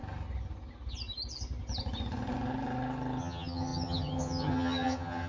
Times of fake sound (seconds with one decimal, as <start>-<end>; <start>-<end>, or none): 3.2-5.3